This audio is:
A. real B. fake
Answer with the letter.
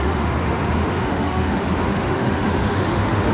B